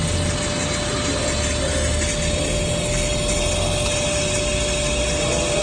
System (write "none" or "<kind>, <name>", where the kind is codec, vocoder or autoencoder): none